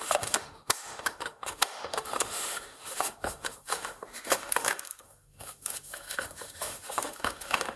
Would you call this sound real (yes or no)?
no